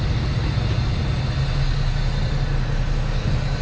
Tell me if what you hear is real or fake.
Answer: real